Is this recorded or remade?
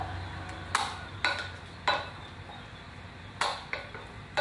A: recorded